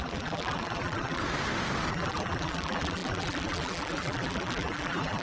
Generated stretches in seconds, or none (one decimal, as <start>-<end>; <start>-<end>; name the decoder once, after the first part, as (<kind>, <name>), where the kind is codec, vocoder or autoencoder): 0.0-1.2 (vocoder, BigVGAN v2); 1.9-5.2